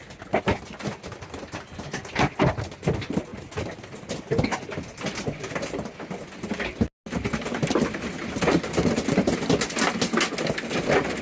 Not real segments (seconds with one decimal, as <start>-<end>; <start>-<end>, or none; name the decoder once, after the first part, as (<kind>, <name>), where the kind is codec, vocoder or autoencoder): none